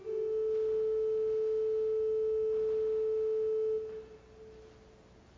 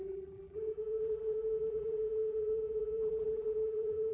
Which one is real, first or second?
first